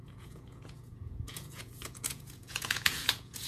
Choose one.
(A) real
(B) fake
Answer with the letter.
B